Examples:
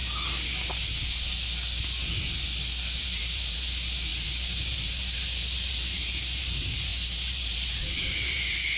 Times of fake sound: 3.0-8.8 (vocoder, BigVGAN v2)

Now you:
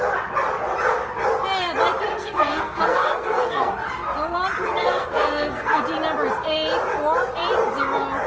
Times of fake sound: 2.1-3.7 (codec, SNAC); 4.8-5.8

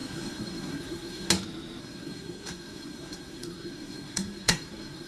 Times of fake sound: 0.0-1.3 (codec, SNAC); 1.8-5.1

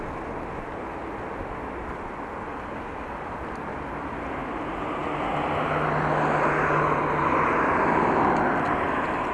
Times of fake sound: none

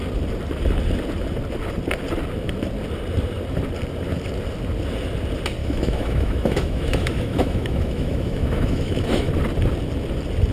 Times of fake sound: 5.6-9.3 (autoencoder, DAC-VAE)

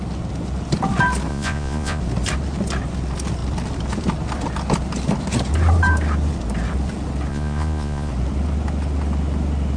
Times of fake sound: 1.3-2.0 (vocoder, Vocos); 7.3-8.1

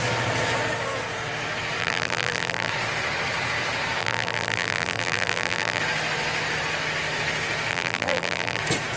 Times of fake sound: 1.8-2.7 (vocoder, BigVGAN v2); 4.0-5.8; 7.7-8.6

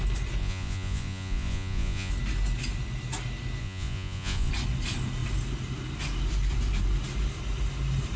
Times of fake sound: 0.4-2.1 (vocoder, Vocos); 3.6-4.5